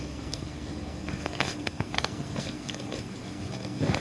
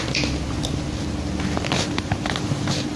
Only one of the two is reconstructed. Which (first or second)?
first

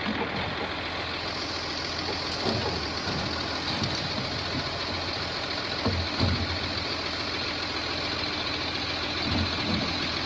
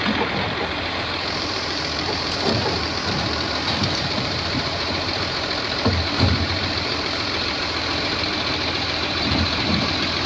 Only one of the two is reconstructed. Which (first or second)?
second